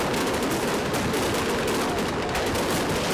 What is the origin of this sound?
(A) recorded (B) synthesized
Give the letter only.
A